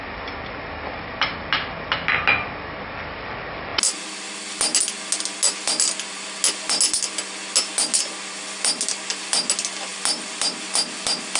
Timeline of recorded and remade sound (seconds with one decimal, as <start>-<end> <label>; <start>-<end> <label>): 0.0-11.4 recorded